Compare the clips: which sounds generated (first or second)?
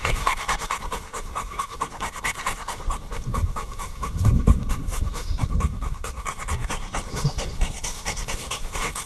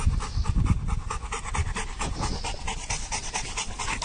first